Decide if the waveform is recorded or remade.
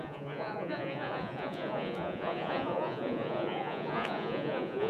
remade